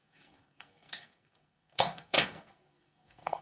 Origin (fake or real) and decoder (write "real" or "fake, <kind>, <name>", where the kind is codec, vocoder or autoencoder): fake, codec, SNAC